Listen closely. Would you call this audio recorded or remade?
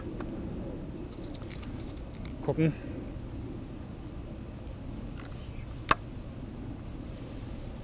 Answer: recorded